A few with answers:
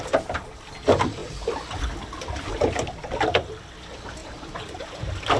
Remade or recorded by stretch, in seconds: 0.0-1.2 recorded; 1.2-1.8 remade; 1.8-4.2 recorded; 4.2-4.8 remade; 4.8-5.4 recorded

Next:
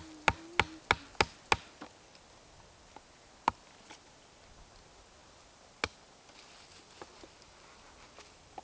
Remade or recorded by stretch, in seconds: 0.0-8.6 recorded

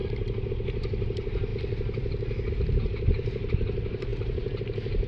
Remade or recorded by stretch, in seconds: 0.0-0.5 recorded; 0.5-1.5 remade; 1.5-2.5 recorded; 2.5-5.1 remade

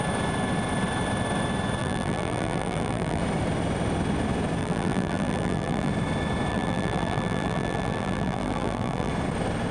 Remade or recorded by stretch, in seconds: 0.0-1.8 recorded; 1.8-3.2 remade; 3.2-4.6 recorded; 4.6-5.9 remade; 5.9-6.5 recorded; 6.5-9.1 remade; 9.1-9.7 recorded

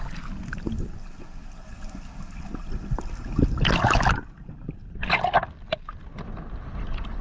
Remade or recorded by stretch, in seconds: 0.0-1.4 recorded; 1.4-3.8 remade; 3.8-7.2 recorded

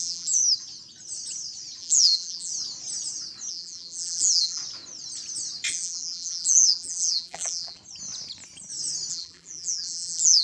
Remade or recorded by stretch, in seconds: 0.0-0.4 remade; 0.4-1.8 recorded; 1.8-2.5 remade; 2.5-3.5 recorded; 3.5-4.6 remade; 4.6-5.7 recorded; 5.7-7.8 remade; 7.8-9.1 recorded; 9.1-10.4 remade